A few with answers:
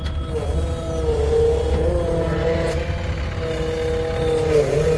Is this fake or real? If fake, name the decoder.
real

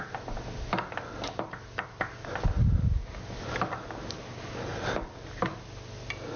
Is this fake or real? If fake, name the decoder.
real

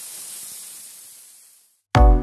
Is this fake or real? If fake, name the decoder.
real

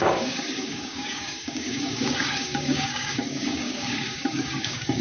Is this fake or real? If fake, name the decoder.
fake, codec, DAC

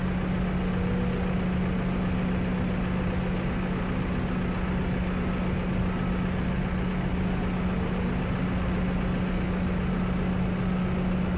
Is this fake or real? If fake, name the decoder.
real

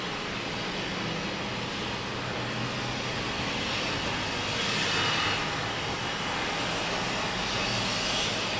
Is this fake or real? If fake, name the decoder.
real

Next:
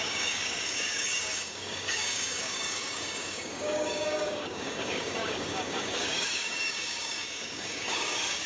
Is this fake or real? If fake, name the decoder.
fake, codec, DAC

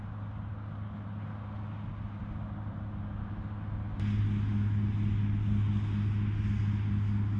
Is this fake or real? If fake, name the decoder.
real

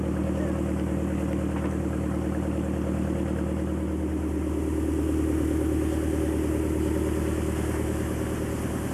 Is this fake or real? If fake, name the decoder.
real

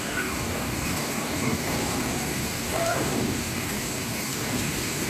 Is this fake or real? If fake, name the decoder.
fake, codec, DAC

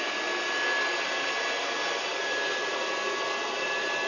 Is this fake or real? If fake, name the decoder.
real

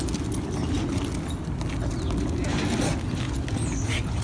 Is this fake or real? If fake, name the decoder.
real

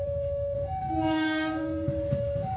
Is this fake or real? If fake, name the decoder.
fake, codec, DAC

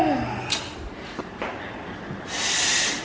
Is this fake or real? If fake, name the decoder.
real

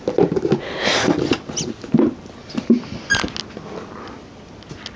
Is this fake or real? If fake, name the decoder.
real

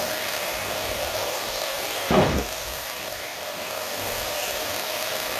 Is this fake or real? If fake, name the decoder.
fake, codec, DAC